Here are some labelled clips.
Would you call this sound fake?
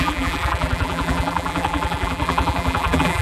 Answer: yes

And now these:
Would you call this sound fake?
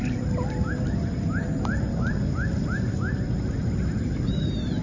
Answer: no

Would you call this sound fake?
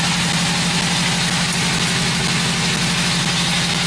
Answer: no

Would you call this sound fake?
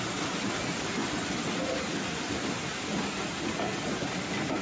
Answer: no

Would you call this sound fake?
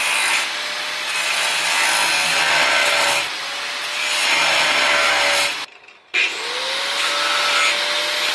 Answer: no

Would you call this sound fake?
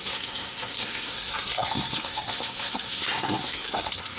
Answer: yes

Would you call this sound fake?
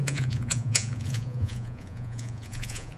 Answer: yes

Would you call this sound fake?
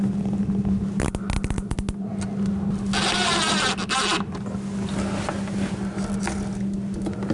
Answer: no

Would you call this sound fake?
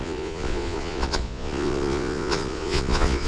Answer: yes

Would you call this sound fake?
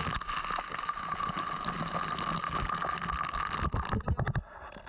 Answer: no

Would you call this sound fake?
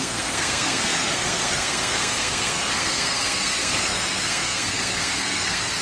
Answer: yes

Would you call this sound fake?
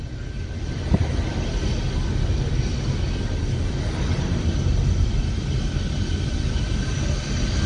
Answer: no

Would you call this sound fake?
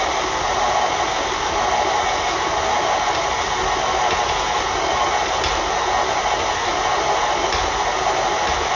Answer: no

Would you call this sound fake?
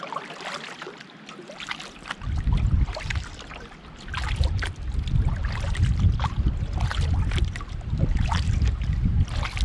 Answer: no